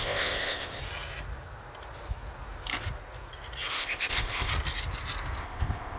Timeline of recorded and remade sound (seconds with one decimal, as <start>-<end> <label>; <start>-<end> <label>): 0.0-0.8 remade; 0.8-3.7 recorded; 3.7-4.5 remade; 4.5-5.4 recorded; 5.4-6.0 remade